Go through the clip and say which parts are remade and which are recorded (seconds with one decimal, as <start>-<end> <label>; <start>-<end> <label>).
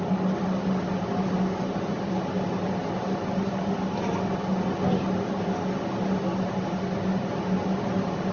0.0-8.3 recorded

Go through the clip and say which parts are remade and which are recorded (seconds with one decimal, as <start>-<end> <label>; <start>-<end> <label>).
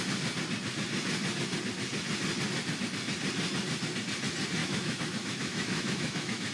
0.0-4.6 recorded; 4.6-6.5 remade